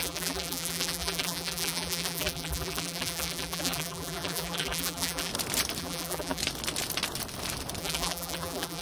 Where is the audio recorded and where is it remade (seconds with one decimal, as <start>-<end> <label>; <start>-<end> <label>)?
0.0-5.3 remade; 5.3-5.8 recorded; 5.8-6.4 remade; 6.4-7.8 recorded; 7.8-8.8 remade